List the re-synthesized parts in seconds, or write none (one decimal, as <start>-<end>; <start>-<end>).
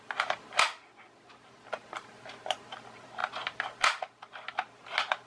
none